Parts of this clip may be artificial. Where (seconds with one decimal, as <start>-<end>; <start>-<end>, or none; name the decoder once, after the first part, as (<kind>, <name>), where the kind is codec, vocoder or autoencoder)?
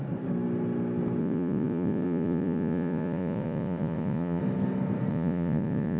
1.2-4.4 (vocoder, Vocos); 5.1-6.0